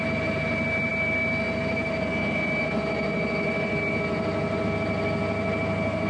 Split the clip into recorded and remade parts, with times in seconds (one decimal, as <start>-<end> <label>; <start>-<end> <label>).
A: 0.0-6.1 recorded